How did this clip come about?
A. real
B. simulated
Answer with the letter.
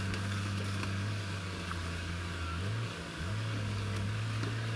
B